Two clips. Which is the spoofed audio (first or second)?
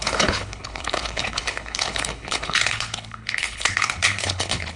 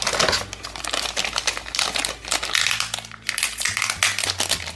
first